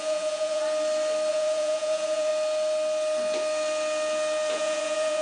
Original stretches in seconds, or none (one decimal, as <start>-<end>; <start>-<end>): 0.6-1.3; 2.3-4.5